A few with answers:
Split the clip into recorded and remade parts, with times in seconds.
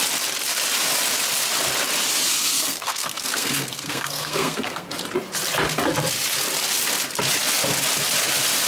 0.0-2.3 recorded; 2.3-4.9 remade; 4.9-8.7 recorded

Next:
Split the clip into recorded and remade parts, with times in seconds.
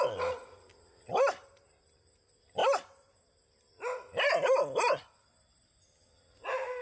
0.0-6.8 recorded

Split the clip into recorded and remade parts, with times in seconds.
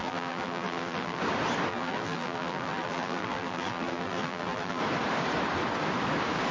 0.0-1.2 remade; 1.2-1.7 recorded; 1.7-4.8 remade; 4.8-6.5 recorded